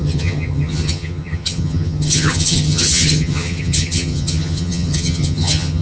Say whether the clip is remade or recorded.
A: remade